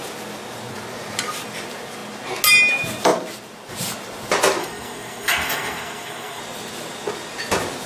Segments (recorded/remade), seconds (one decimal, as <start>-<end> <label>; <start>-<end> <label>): 0.0-4.6 recorded; 4.6-6.4 remade; 6.4-7.9 recorded